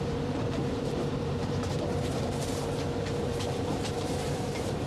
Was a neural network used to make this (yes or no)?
yes